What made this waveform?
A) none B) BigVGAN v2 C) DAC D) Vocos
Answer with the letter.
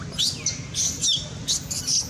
A